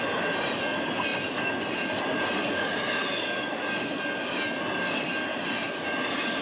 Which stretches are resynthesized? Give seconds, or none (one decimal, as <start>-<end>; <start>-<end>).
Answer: none